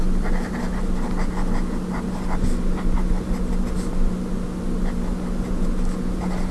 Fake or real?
real